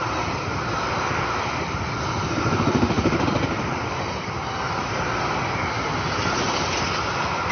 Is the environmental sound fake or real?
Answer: real